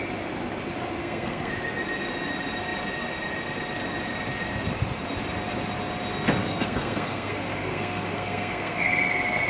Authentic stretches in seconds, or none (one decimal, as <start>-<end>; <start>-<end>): 0.0-1.0; 1.5-6.4; 8.9-9.5